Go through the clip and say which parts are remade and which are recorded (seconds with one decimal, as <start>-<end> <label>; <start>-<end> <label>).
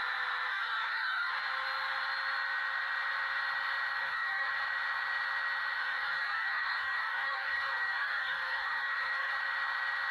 0.0-0.5 recorded; 0.5-1.3 remade; 1.3-4.0 recorded; 4.0-4.5 remade; 4.5-5.8 recorded; 5.8-9.3 remade; 9.3-10.1 recorded